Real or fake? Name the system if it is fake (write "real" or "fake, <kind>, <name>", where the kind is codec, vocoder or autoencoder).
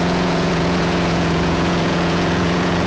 fake, vocoder, Vocos